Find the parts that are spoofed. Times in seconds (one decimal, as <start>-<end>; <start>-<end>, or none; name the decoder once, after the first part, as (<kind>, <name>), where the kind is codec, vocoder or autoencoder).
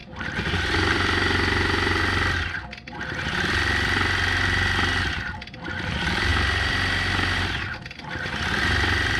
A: none